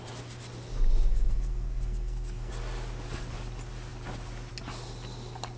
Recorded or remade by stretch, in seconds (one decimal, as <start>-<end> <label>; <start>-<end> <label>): 0.0-1.1 recorded; 1.1-2.5 remade; 2.5-5.6 recorded